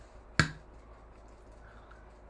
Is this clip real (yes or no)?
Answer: yes